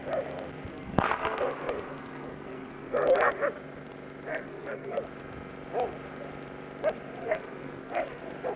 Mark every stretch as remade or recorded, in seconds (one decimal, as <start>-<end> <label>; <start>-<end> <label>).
0.0-0.7 recorded; 0.7-3.3 remade; 3.3-4.3 recorded; 4.3-5.0 remade; 5.0-7.2 recorded; 7.2-8.2 remade; 8.2-8.6 recorded